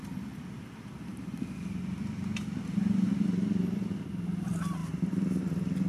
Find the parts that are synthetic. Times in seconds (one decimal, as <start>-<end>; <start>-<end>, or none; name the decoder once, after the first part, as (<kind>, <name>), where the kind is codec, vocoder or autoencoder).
none